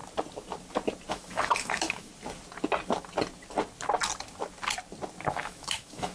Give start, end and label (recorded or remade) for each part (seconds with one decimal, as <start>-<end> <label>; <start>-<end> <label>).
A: 0.0-1.1 recorded; 1.1-2.1 remade; 2.1-5.3 recorded; 5.3-6.1 remade